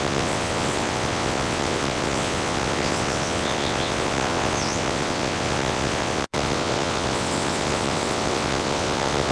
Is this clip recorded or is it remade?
remade